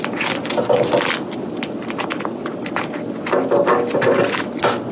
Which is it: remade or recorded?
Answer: recorded